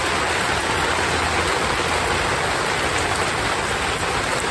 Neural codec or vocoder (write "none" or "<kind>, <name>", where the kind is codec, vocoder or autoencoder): none